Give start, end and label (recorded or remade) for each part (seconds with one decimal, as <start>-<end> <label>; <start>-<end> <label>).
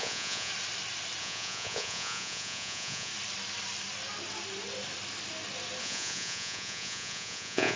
0.0-0.5 remade; 0.5-1.2 recorded; 1.2-3.1 remade; 3.1-5.8 recorded; 5.8-7.8 remade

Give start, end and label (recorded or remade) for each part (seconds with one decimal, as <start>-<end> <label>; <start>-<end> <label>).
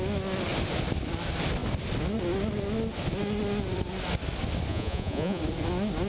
0.0-4.7 recorded; 4.7-5.4 remade; 5.4-6.1 recorded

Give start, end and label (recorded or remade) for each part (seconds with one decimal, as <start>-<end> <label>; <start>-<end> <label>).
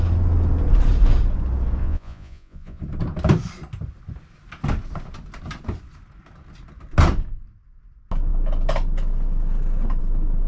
0.0-1.8 recorded; 1.8-2.8 remade; 2.8-10.5 recorded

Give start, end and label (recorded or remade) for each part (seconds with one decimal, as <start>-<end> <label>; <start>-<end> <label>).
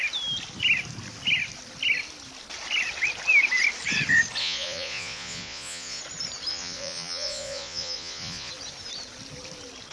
0.0-4.4 recorded; 4.4-6.0 remade; 6.0-6.5 recorded; 6.5-8.5 remade; 8.5-9.9 recorded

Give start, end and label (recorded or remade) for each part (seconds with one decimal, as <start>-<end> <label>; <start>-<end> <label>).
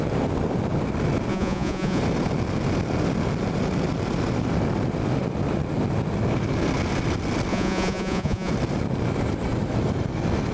0.0-1.3 recorded; 1.3-2.0 remade; 2.0-7.5 recorded; 7.5-8.5 remade; 8.5-10.5 recorded